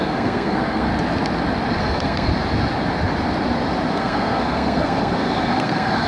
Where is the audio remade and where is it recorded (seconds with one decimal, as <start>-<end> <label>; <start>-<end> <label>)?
0.0-0.9 remade; 0.9-1.8 recorded; 1.8-2.3 remade; 2.3-3.9 recorded; 3.9-6.1 remade